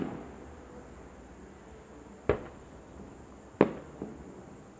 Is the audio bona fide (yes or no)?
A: yes